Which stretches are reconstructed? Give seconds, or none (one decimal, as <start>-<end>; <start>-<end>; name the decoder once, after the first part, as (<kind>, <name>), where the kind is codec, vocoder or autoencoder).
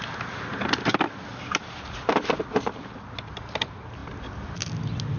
none